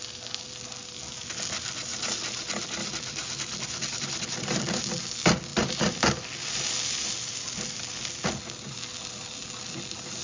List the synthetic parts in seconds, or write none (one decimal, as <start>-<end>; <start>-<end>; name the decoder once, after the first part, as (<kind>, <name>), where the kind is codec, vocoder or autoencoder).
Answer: none